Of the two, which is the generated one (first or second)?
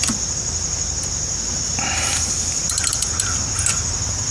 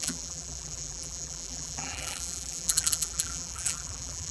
second